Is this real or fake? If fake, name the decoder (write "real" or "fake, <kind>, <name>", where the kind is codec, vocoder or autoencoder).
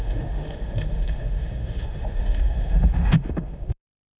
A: fake, autoencoder, DAC-VAE